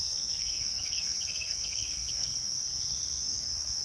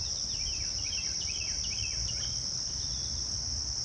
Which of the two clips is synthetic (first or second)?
first